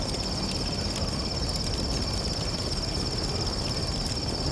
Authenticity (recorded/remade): recorded